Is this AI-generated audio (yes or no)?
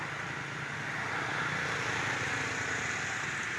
no